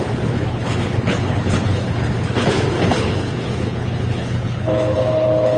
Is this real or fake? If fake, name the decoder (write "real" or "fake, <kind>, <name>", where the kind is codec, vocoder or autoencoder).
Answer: fake, codec, HILCodec